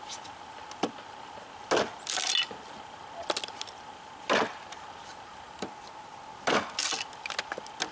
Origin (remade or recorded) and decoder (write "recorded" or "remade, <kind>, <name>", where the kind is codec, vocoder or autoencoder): recorded